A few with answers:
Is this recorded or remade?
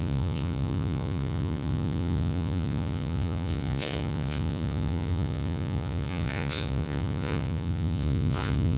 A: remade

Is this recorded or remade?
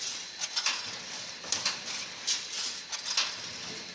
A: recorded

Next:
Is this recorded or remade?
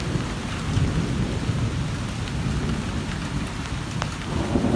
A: recorded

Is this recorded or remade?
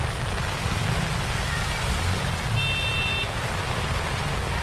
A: recorded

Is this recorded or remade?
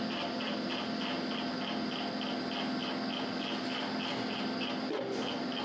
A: recorded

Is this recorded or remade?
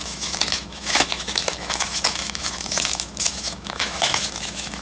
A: remade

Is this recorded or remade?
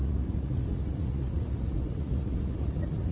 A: remade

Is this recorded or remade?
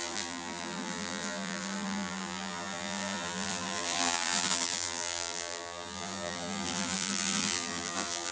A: remade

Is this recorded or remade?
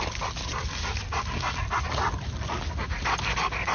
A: recorded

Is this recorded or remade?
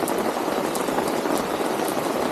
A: recorded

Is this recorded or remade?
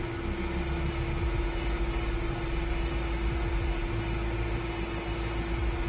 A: recorded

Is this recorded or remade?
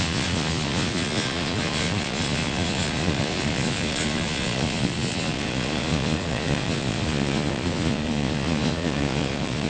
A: remade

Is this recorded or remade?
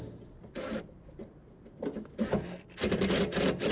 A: recorded